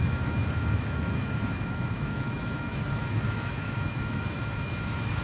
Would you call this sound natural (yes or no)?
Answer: no